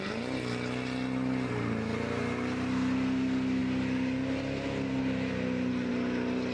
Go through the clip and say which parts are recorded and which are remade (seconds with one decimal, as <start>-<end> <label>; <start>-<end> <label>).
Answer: 0.0-6.5 recorded